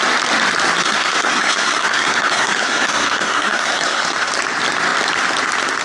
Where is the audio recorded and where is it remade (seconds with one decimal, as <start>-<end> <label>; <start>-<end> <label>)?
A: 0.0-0.8 recorded; 0.8-4.3 remade; 4.3-5.8 recorded